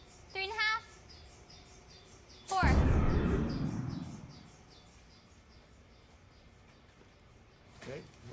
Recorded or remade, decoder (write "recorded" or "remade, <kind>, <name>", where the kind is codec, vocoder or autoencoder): remade, vocoder, BigVGAN v2